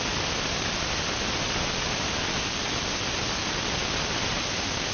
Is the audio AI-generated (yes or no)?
no